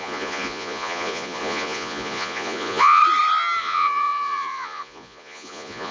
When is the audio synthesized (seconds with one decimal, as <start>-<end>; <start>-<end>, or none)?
0.0-3.0; 3.6-5.9